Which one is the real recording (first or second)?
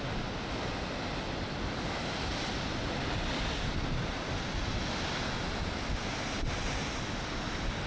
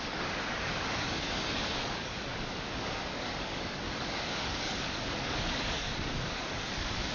first